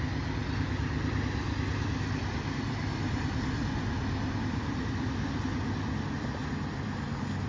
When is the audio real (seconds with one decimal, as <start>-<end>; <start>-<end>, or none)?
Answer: 0.0-7.5